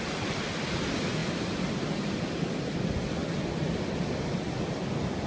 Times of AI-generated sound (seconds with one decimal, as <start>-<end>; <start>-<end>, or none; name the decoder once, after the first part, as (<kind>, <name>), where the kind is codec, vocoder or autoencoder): none